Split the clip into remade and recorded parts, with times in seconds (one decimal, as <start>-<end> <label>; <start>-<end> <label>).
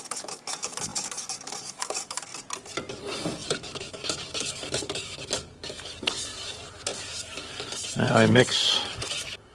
0.0-2.3 remade; 2.3-2.9 recorded; 2.9-9.5 remade